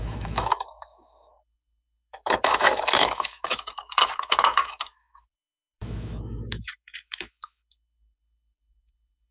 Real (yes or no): no